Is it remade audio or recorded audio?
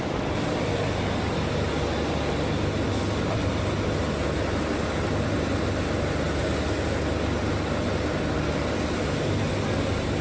recorded